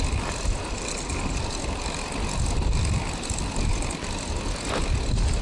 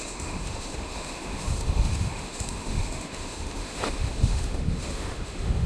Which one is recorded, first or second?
first